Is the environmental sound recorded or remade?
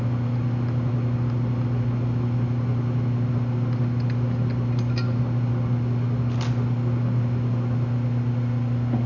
recorded